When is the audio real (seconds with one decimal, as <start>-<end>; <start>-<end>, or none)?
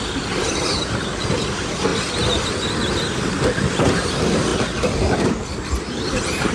0.0-6.5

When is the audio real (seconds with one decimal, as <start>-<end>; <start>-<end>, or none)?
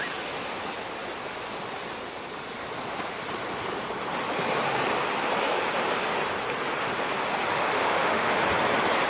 0.0-7.7; 8.3-9.1